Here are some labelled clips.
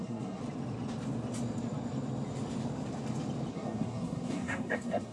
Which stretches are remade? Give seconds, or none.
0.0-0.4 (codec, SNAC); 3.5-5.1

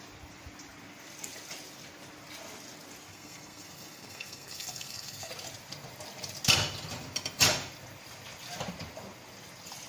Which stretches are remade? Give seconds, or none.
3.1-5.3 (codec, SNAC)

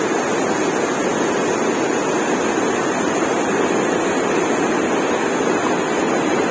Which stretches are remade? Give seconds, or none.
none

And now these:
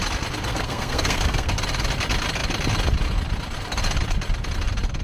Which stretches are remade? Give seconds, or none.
0.5-1.5 (codec, SNAC)

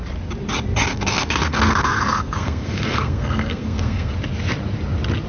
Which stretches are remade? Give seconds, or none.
0.9-4.1 (codec, SNAC)

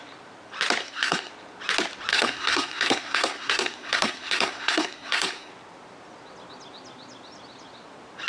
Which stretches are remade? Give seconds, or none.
0.8-1.3 (codec, SNAC); 2.1-5.5

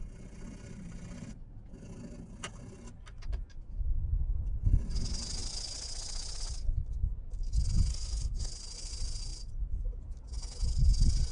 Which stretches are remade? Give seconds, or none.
7.9-8.5 (codec, SNAC)